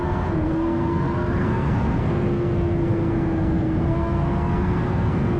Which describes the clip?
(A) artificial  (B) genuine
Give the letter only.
A